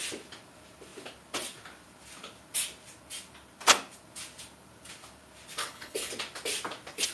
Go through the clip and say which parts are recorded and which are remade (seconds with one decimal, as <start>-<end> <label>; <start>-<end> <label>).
0.0-5.6 recorded; 5.6-6.1 remade; 6.1-7.1 recorded